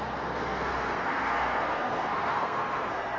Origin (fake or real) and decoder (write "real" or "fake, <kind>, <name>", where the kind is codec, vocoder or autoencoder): fake, codec, SNAC